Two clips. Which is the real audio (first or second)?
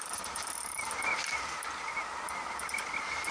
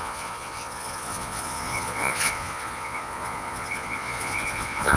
first